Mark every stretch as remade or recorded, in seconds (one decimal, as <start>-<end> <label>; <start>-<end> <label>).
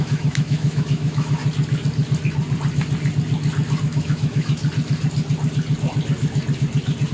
0.0-1.4 remade; 1.4-3.8 recorded; 3.8-4.6 remade; 4.6-7.1 recorded